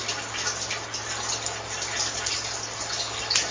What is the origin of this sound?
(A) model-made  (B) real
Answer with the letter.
B